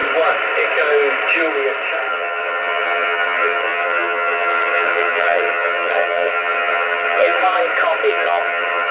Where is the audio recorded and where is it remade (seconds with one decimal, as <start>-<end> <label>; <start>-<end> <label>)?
0.0-2.1 recorded; 2.1-7.4 remade; 7.4-8.1 recorded; 8.1-8.9 remade